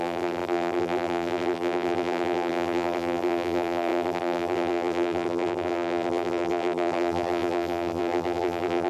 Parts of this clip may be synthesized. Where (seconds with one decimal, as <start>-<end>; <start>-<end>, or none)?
0.0-8.9